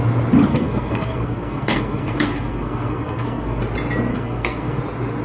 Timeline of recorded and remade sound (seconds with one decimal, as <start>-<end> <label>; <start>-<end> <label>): 0.0-0.5 recorded; 0.5-3.6 remade; 3.6-4.1 recorded; 4.1-4.8 remade; 4.8-5.2 recorded